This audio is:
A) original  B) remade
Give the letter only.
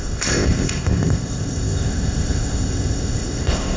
B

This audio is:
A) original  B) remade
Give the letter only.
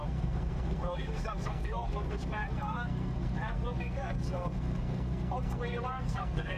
B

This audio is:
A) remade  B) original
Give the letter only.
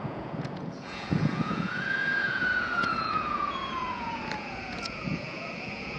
A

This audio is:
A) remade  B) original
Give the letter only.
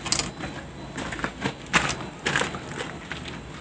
B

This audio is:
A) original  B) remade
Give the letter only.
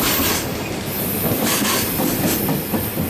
A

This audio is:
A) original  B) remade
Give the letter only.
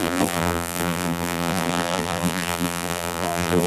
B